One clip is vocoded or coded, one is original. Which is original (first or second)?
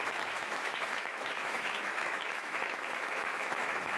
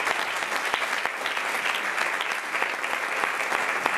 second